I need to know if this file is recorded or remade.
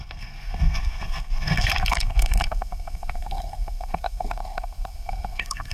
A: remade